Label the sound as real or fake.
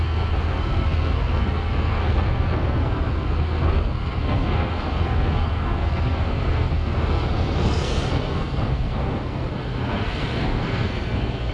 fake